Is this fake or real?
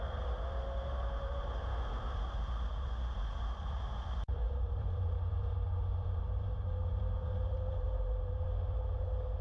fake